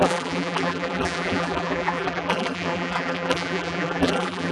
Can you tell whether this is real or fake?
fake